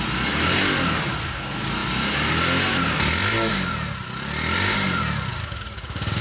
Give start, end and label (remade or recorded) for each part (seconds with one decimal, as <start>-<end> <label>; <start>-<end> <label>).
0.0-5.3 recorded; 5.3-6.2 remade